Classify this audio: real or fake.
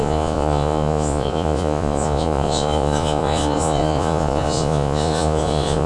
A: fake